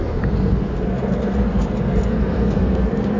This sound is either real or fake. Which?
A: fake